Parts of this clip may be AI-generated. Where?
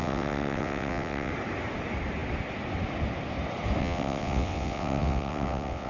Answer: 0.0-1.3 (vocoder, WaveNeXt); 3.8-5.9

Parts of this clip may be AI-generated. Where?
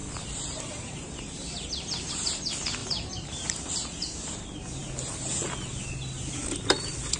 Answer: 0.0-2.1 (vocoder, BigVGAN v2); 2.8-3.7